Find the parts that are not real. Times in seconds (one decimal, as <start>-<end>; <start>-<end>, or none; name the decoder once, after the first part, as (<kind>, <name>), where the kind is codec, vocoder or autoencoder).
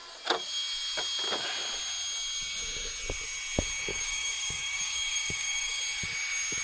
3.9-5.8 (codec, DAC)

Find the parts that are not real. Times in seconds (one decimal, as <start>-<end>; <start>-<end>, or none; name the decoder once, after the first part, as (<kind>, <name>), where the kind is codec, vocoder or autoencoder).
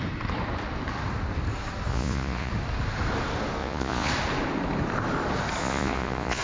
1.9-2.5 (vocoder, Vocos); 3.6-4.1; 5.6-6.4